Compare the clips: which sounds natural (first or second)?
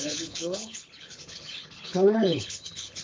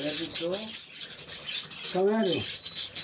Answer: second